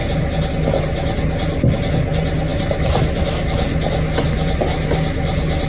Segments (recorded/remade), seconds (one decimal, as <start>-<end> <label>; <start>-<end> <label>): 0.0-5.7 recorded